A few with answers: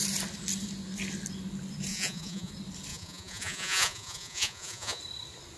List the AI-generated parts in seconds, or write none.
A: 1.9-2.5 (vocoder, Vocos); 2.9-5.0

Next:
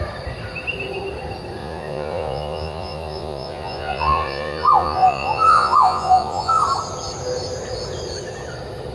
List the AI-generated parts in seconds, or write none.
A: 1.6-6.6 (vocoder, Vocos)

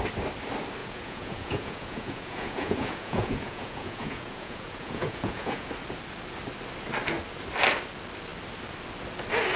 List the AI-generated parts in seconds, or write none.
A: 0.8-5.7 (vocoder, Vocos)

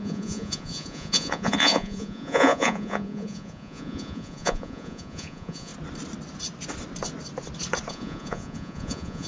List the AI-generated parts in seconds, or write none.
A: 0.0-5.7 (vocoder, Vocos); 7.9-9.3

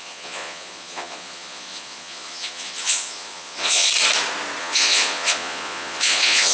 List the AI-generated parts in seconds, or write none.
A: 0.0-3.9 (vocoder, Vocos); 4.6-6.5

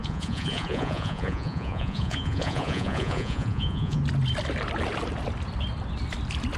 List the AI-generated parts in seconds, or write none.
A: 0.0-4.0 (vocoder, Vocos)